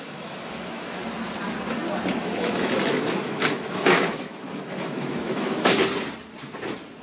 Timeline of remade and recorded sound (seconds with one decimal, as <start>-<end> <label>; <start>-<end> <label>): 0.0-1.0 remade; 1.0-2.2 recorded; 2.2-5.8 remade; 5.8-7.0 recorded